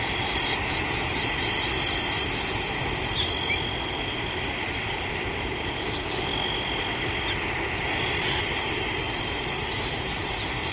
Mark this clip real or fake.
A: real